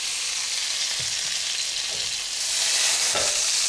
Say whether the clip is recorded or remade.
recorded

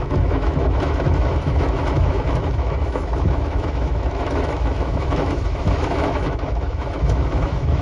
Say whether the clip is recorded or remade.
remade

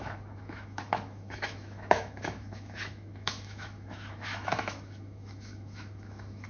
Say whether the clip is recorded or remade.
remade